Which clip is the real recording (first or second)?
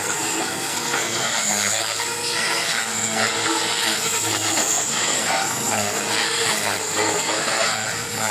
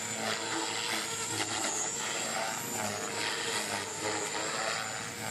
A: second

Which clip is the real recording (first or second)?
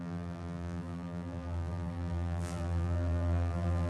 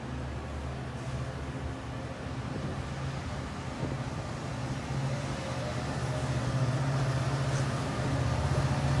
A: second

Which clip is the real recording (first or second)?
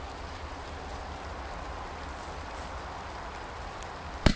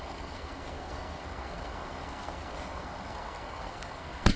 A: first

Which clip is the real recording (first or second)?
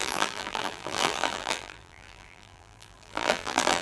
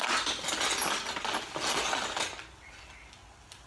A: second